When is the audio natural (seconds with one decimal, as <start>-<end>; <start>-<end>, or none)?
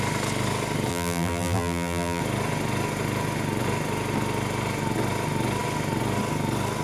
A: 0.0-0.9; 2.2-6.8